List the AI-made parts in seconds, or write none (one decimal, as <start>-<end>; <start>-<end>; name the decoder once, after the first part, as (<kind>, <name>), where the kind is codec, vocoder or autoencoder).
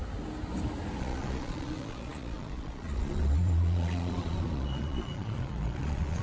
1.0-6.2 (vocoder, Vocos)